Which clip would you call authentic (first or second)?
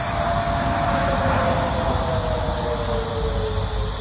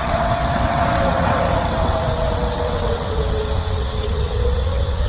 first